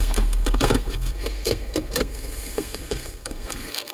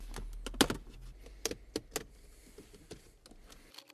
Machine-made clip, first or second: first